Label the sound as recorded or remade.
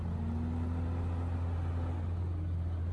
recorded